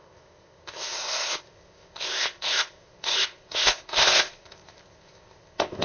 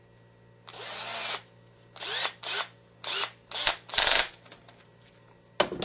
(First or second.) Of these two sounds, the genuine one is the second